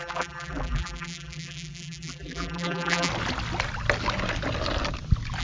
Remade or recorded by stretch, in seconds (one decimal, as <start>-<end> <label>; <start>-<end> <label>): 0.0-3.1 remade; 3.1-5.4 recorded